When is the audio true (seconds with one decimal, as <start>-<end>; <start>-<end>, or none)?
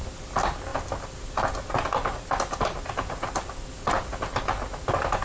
0.0-5.2